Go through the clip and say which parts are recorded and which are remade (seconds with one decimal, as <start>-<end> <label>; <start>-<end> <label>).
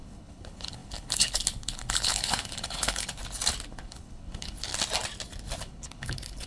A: 0.0-3.2 remade; 3.2-3.7 recorded; 3.7-4.7 remade; 4.7-5.6 recorded; 5.6-6.5 remade